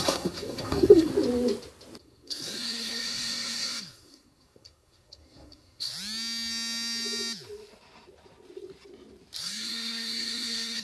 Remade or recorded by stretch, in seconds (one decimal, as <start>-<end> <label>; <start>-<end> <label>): 0.0-1.1 remade; 1.1-2.0 recorded; 2.0-5.9 remade; 5.9-9.4 recorded; 9.4-10.8 remade